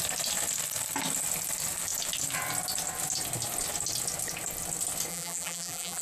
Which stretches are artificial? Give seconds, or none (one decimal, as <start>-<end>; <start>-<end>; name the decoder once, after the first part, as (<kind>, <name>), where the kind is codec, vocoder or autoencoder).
5.1-6.0 (vocoder, BigVGAN v2)